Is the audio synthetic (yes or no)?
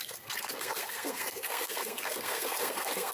yes